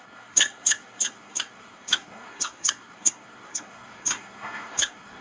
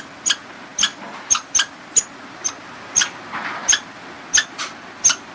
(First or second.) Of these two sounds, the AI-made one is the first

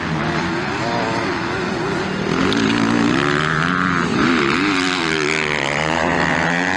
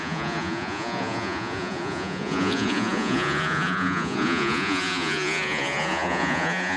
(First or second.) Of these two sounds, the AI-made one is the second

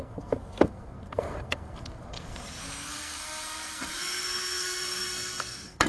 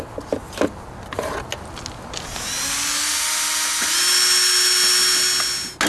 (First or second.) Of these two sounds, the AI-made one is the first